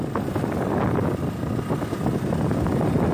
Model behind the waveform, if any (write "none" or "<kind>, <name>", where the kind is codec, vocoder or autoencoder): none